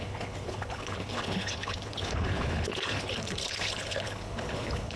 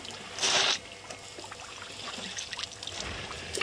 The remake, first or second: first